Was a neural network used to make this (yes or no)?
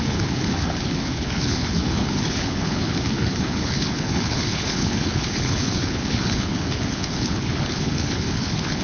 yes